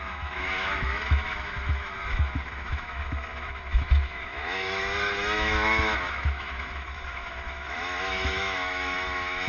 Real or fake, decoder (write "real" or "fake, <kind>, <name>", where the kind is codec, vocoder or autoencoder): fake, autoencoder, DAC-VAE